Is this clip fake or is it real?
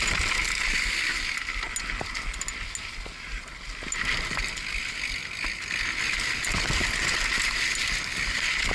real